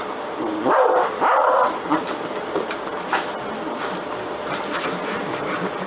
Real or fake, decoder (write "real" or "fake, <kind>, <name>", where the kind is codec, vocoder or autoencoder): real